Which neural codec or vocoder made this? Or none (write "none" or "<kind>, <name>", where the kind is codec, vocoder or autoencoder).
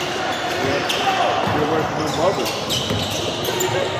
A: none